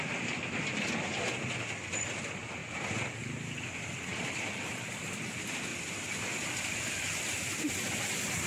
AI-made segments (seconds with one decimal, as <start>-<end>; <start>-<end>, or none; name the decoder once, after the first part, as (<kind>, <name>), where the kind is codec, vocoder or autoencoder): none